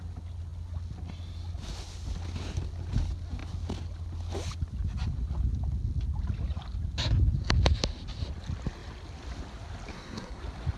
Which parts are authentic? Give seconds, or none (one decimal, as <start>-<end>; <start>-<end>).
0.0-9.9; 10.4-10.8